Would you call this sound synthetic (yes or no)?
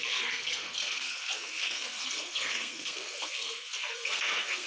yes